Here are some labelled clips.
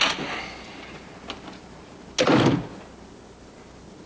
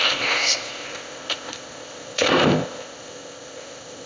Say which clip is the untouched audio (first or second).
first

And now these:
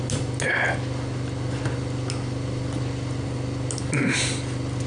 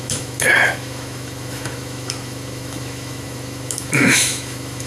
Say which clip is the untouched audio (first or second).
first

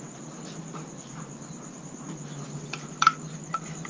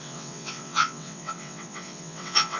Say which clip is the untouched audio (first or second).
first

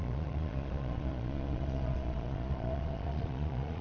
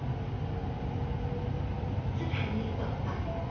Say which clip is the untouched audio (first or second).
second